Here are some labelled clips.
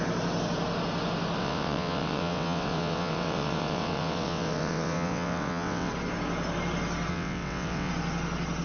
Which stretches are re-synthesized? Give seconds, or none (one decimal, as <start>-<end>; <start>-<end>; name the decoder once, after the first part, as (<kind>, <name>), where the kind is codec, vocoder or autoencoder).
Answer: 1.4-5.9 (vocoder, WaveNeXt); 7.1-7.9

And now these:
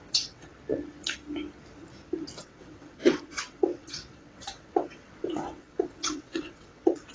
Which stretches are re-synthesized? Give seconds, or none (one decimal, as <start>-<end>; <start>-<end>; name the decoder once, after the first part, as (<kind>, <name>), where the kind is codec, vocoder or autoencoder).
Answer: 0.0-0.5 (vocoder, WaveNeXt); 2.4-7.1

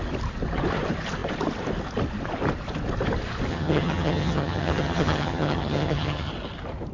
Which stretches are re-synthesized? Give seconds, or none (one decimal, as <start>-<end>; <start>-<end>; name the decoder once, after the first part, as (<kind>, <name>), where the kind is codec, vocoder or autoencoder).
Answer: 3.5-6.3 (vocoder, HiFi-GAN)

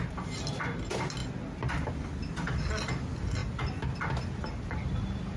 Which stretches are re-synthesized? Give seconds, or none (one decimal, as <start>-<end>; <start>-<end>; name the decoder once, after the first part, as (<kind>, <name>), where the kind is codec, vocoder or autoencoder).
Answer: 3.4-4.6 (vocoder, BigVGAN v2)

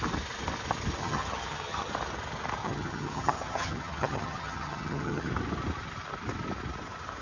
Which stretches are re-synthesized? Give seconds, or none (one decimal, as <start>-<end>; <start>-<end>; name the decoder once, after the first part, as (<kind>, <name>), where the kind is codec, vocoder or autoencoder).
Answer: 1.0-1.9 (vocoder, HiFi-GAN); 2.6-5.3

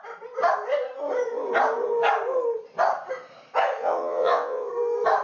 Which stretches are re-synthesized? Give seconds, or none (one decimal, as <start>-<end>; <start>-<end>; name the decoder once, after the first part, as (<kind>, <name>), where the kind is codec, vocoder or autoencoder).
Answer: 3.8-4.7 (vocoder, WaveNeXt)